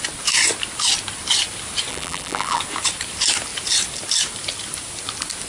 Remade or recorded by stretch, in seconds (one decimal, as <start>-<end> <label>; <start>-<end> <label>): 0.0-1.9 recorded; 1.9-2.6 remade; 2.6-5.5 recorded